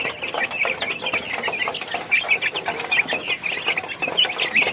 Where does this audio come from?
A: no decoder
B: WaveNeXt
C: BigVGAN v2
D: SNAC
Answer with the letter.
A